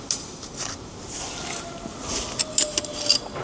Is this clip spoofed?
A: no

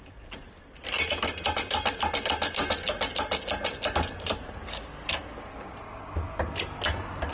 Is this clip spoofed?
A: no